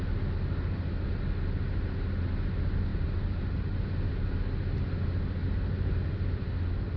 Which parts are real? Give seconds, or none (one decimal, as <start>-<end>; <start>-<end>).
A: 0.0-2.9; 3.8-5.4; 6.5-7.0